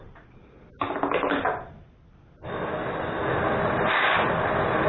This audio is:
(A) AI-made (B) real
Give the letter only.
B